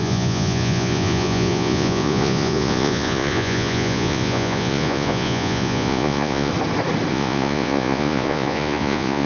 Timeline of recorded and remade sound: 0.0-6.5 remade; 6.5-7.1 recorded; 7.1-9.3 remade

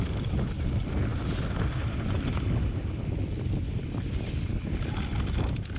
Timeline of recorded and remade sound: 0.0-5.8 recorded

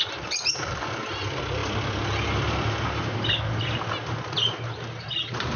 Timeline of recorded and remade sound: 0.0-5.6 recorded